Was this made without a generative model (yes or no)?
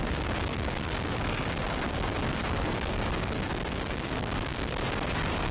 no